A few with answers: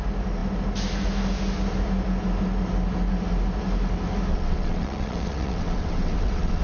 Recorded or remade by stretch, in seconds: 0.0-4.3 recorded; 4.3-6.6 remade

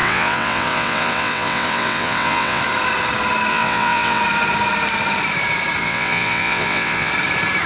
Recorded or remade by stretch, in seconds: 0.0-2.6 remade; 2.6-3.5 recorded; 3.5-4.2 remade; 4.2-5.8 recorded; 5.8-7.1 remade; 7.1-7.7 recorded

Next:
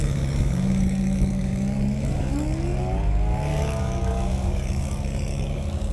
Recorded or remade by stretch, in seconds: 0.0-5.9 remade

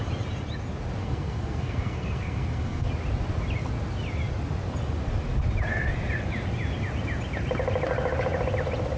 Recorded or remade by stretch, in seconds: 0.0-1.0 recorded; 1.0-2.9 remade; 2.9-9.0 recorded

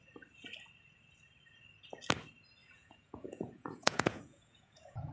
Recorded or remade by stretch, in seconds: 0.0-2.6 recorded; 2.6-5.1 remade

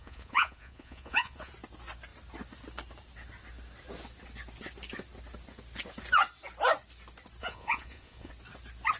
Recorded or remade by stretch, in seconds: 0.0-1.5 remade; 1.5-7.4 recorded; 7.4-8.3 remade; 8.3-9.0 recorded